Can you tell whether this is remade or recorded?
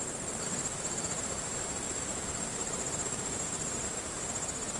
remade